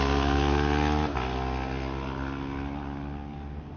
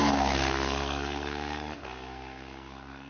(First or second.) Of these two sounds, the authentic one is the first